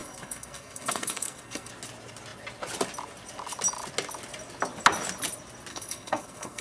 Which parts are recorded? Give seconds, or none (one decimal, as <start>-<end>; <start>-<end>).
1.7-5.7